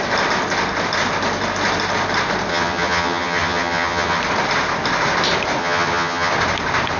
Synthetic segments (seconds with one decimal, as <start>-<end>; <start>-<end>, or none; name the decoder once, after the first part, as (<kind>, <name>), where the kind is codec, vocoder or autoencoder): 2.5-4.2 (vocoder, HiFi-GAN); 5.6-6.3